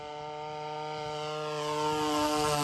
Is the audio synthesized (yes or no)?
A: no